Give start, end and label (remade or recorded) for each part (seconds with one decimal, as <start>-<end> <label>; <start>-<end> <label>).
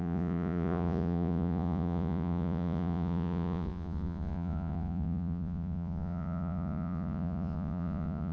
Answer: 0.0-8.3 remade